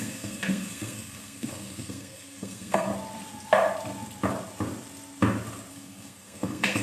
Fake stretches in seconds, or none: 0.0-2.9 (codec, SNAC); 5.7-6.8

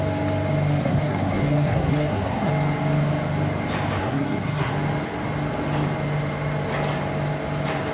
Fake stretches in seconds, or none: 0.8-2.5 (codec, SNAC); 4.0-4.7

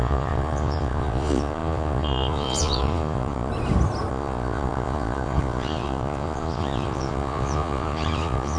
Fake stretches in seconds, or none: 0.0-3.5 (vocoder, Vocos); 4.1-8.6

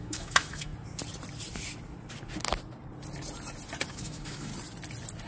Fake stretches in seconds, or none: 0.0-0.7 (autoencoder, DAC-VAE); 3.9-4.5

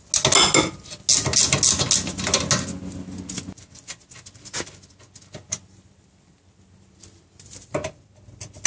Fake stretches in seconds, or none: none

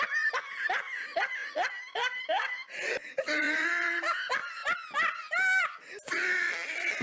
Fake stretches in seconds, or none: 0.0-1.4 (vocoder, BigVGAN v2); 2.2-4.6; 5.6-7.0

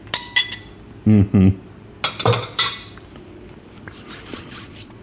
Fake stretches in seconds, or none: 4.3-5.0 (vocoder, Vocos)